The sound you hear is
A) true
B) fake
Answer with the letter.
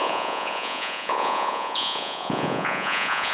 B